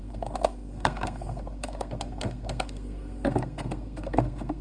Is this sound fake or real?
fake